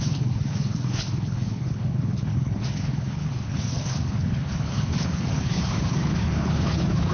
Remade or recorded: remade